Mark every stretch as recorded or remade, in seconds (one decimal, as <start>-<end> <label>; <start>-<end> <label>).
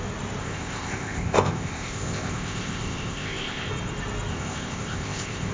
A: 0.0-0.4 recorded; 0.4-3.7 remade; 3.7-4.3 recorded; 4.3-5.5 remade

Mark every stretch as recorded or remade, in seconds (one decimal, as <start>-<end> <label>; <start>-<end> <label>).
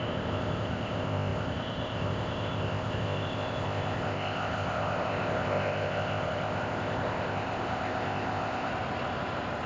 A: 0.0-8.7 remade; 8.7-9.7 recorded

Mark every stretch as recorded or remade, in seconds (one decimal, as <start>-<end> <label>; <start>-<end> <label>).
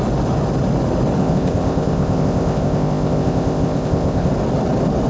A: 0.0-1.2 recorded; 1.2-4.3 remade; 4.3-5.1 recorded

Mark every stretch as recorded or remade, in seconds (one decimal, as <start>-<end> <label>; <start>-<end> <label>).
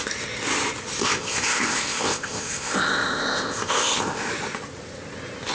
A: 0.0-1.0 recorded; 1.0-4.3 remade; 4.3-5.5 recorded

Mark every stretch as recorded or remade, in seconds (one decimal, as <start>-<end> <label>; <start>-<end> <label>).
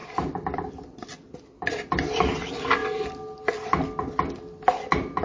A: 0.0-5.2 recorded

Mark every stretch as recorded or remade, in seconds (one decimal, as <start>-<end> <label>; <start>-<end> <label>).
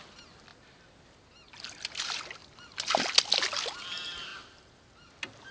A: 0.0-5.5 recorded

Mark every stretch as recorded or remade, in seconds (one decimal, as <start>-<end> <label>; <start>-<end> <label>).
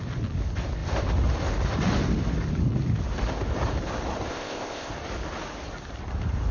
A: 0.0-4.3 recorded; 4.3-4.9 remade; 4.9-6.5 recorded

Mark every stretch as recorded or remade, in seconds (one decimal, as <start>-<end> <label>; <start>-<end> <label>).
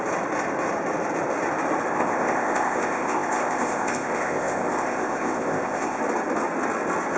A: 0.0-1.9 recorded; 1.9-6.0 remade; 6.0-7.2 recorded